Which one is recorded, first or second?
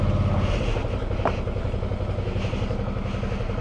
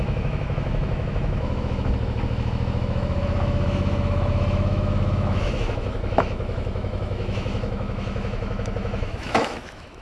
first